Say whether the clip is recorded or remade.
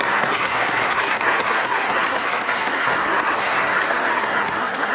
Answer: remade